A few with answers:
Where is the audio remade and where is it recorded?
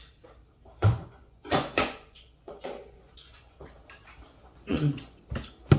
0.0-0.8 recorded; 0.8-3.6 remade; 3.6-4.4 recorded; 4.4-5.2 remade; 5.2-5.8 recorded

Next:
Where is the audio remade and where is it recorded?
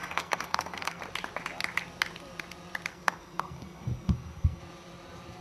0.0-1.0 remade; 1.0-2.9 recorded; 2.9-4.6 remade; 4.6-5.4 recorded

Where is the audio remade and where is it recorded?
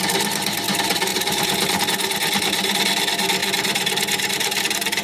0.0-1.1 recorded; 1.1-1.8 remade; 1.8-3.4 recorded; 3.4-4.6 remade; 4.6-5.0 recorded